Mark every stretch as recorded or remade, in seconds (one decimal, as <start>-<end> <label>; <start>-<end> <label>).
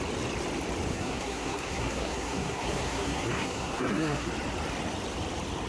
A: 0.0-0.9 recorded; 0.9-4.3 remade; 4.3-5.7 recorded